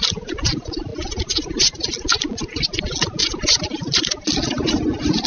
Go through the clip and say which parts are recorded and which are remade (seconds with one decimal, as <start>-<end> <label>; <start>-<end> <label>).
0.0-5.3 recorded